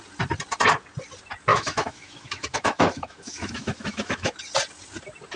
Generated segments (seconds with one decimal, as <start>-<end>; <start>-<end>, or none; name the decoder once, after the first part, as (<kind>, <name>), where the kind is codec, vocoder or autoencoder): 1.5-4.4 (autoencoder, DAC-VAE)